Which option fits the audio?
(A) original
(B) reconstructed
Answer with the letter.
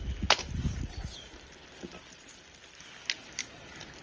A